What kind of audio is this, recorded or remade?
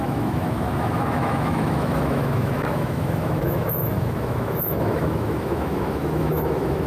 remade